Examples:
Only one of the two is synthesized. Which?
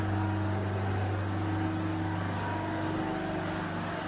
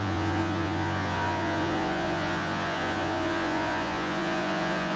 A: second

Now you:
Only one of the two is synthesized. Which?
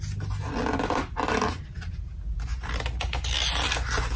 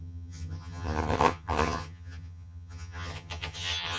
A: second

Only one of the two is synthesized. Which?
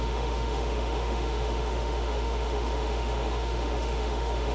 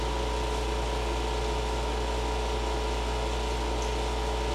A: first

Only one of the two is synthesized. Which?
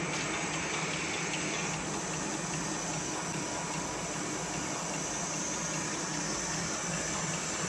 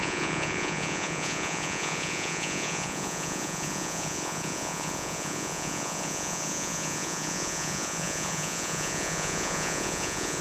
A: second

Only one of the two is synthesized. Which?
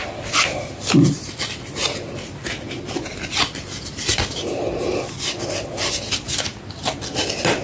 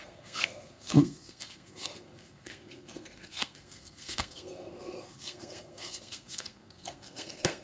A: second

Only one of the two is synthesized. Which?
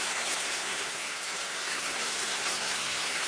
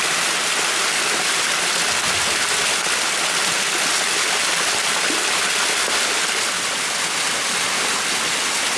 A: first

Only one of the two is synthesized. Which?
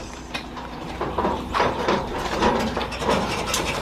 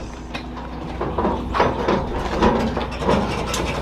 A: first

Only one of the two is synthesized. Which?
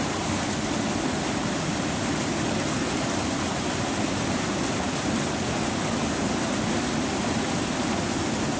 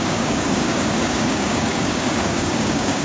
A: second